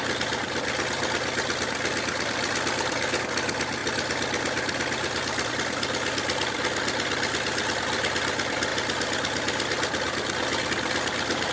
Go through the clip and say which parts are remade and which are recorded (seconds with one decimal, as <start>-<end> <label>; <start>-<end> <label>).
0.0-11.5 recorded